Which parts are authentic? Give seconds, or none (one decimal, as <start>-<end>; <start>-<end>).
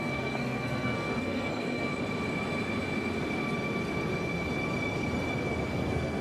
1.9-5.6